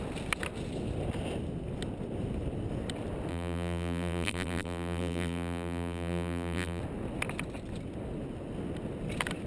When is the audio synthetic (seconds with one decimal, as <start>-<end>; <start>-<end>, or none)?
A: 3.3-6.8